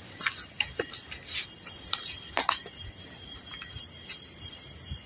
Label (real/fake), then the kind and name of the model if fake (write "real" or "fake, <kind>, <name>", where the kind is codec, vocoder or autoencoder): real